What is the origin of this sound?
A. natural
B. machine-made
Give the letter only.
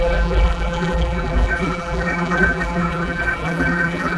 B